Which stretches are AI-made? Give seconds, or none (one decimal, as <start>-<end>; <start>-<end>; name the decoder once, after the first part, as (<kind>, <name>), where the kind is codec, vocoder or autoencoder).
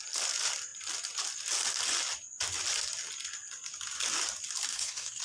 4.7-5.2 (codec, SNAC)